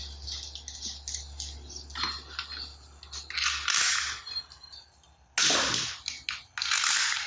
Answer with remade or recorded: recorded